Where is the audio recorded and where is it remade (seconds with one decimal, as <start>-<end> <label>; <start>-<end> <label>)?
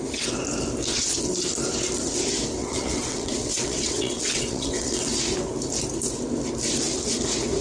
0.0-2.6 recorded; 2.6-5.1 remade; 5.1-7.6 recorded